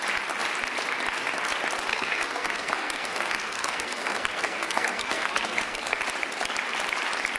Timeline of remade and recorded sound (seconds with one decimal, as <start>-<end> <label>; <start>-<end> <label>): 0.0-1.9 recorded; 1.9-6.0 remade; 6.0-7.4 recorded

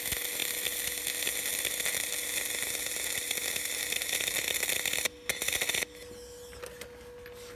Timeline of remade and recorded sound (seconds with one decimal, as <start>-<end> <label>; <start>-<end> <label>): 0.0-7.6 recorded

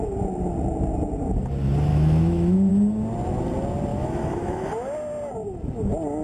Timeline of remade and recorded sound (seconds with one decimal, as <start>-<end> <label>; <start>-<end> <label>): 0.0-1.9 recorded; 1.9-2.7 remade; 2.7-3.9 recorded; 3.9-4.7 remade; 4.7-6.2 recorded

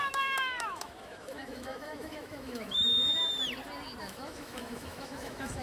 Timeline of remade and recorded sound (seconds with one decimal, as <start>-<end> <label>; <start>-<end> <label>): 0.0-3.1 remade; 3.1-4.0 recorded; 4.0-5.6 remade

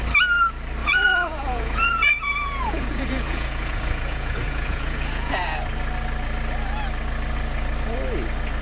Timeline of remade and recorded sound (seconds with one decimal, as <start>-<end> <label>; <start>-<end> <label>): 0.0-0.8 recorded; 0.8-5.3 remade; 5.3-8.6 recorded

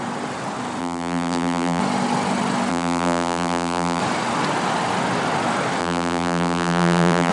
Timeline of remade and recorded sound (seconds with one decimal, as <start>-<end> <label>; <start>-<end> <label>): 0.0-0.8 recorded; 0.8-1.8 remade; 1.8-2.7 recorded; 2.7-4.0 remade; 4.0-5.8 recorded; 5.8-7.3 remade